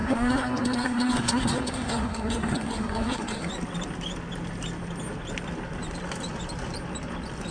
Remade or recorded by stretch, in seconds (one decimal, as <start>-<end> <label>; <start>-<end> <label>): 0.0-3.5 remade; 3.5-7.5 recorded